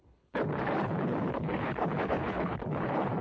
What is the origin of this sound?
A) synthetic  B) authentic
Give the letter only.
A